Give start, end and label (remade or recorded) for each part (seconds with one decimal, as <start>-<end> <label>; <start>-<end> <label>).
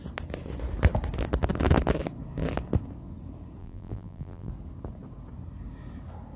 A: 0.0-3.6 recorded; 3.6-4.5 remade; 4.5-6.4 recorded